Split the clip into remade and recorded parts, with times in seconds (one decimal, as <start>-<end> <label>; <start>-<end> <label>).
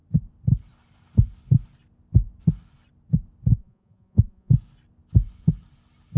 0.0-3.5 recorded; 3.5-4.5 remade; 4.5-6.2 recorded